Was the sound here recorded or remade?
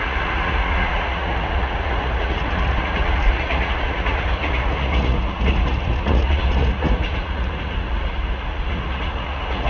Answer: remade